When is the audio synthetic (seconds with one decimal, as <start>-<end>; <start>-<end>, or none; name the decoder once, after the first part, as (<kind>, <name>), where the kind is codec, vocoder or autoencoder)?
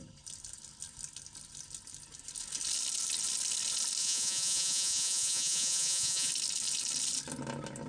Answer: 4.0-6.3 (vocoder, Vocos)